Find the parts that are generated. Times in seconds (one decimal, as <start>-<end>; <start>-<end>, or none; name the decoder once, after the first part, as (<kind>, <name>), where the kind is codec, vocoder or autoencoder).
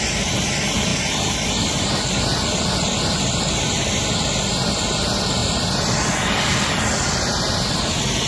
5.4-7.2 (vocoder, BigVGAN v2)